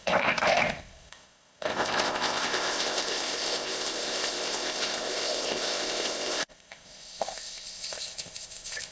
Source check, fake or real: fake